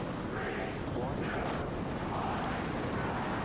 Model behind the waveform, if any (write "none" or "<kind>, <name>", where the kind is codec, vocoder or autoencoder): none